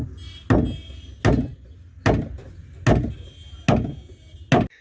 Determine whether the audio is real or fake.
real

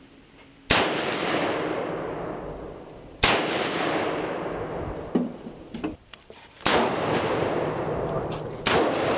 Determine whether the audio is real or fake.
fake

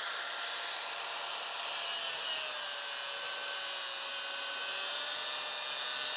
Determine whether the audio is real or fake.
real